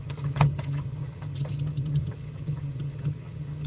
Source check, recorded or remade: remade